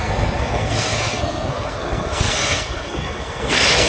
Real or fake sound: fake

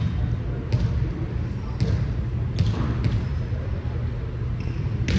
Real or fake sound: real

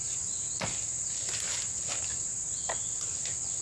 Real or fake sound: real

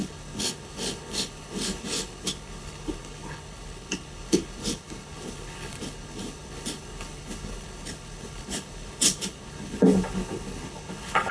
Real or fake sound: fake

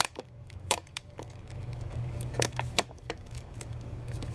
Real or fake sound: fake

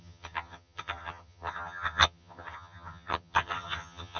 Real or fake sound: fake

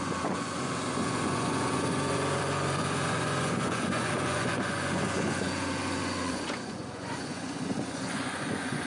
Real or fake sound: fake